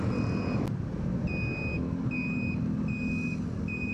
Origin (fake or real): real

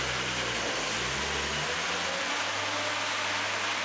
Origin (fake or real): real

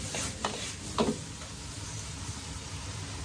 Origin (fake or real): real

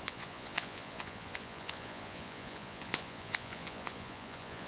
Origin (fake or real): fake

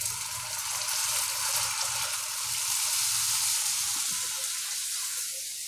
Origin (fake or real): real